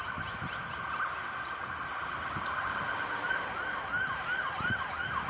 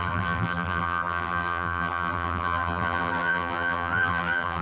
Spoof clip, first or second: second